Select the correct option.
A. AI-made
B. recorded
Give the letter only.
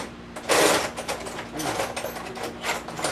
B